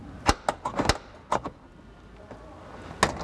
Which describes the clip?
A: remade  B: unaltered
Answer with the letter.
B